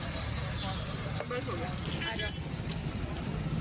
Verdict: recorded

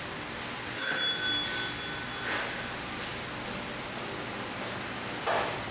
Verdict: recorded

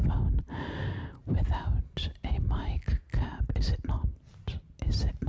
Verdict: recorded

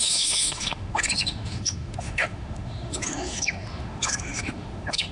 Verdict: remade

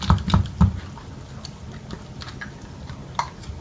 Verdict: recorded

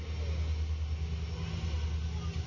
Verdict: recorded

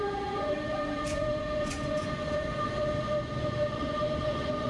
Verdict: remade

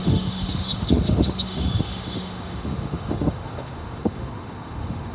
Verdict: remade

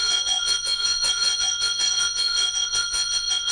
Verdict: remade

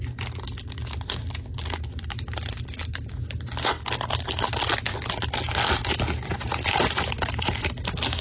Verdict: recorded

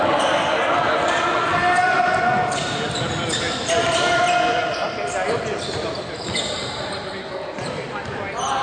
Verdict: recorded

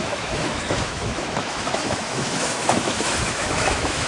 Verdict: remade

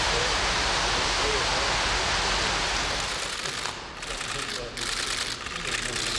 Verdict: recorded